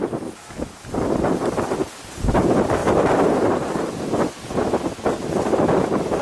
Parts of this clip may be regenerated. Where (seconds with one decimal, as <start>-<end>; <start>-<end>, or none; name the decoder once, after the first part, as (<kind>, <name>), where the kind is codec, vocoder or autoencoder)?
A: 2.8-3.9 (vocoder, BigVGAN v2)